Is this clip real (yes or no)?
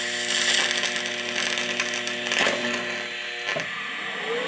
yes